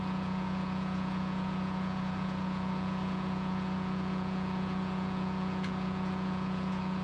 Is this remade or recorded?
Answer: remade